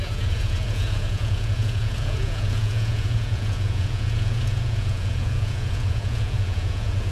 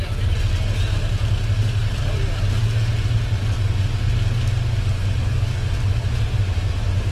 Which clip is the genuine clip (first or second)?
second